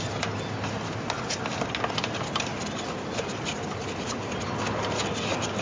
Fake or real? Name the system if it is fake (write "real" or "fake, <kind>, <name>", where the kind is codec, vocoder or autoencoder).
real